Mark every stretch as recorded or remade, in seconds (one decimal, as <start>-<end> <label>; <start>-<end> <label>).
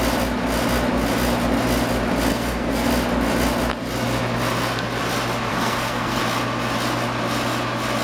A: 0.0-2.3 recorded; 2.3-2.9 remade; 2.9-5.5 recorded; 5.5-6.2 remade; 6.2-8.0 recorded